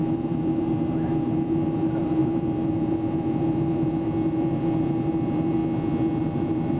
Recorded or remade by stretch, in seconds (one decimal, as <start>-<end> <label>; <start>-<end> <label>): 0.0-5.6 remade; 5.6-6.2 recorded; 6.2-6.8 remade